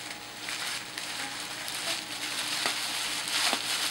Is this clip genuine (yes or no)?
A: yes